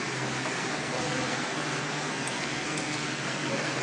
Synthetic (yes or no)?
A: yes